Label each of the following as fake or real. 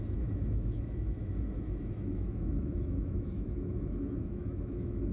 fake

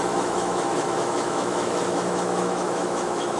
fake